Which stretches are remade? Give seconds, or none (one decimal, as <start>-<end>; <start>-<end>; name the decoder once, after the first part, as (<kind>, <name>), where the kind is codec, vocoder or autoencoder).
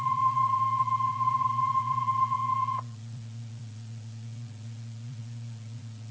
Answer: 0.0-6.1 (vocoder, Vocos)